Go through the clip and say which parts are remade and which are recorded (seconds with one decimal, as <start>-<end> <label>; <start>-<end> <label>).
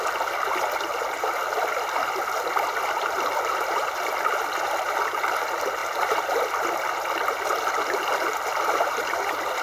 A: 0.0-9.6 recorded